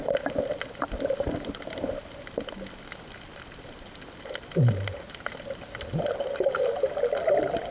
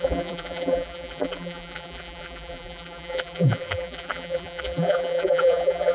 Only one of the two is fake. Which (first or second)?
second